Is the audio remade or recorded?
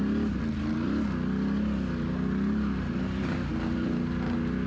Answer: recorded